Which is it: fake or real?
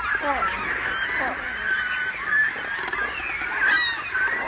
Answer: real